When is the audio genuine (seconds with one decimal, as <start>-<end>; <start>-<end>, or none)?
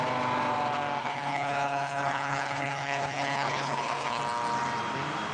0.0-1.0; 4.2-5.3